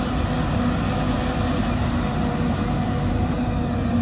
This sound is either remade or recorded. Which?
recorded